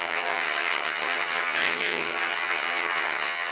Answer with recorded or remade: remade